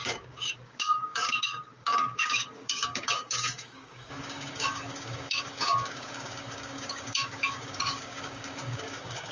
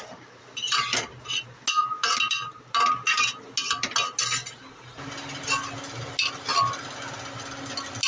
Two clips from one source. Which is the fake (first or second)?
first